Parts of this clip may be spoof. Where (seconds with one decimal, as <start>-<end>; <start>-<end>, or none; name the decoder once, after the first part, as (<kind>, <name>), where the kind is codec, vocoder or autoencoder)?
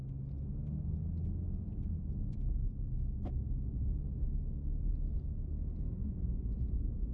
6.0-7.1 (vocoder, Vocos)